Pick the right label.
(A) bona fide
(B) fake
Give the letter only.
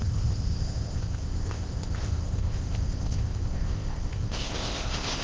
B